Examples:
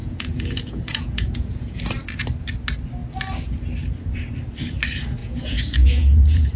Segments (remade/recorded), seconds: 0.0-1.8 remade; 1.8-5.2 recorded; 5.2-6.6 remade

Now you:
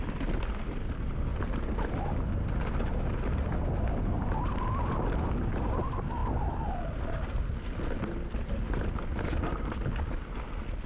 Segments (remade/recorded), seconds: 0.0-10.9 recorded

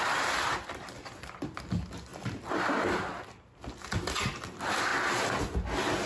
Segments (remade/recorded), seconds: 0.0-6.1 recorded

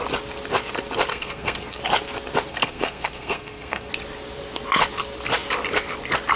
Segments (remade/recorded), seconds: 0.0-1.1 recorded; 1.1-1.8 remade; 1.8-2.5 recorded; 2.5-3.9 remade; 3.9-6.4 recorded

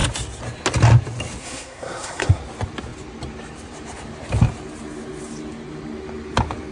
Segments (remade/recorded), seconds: 0.0-1.4 recorded; 1.4-2.4 remade; 2.4-6.7 recorded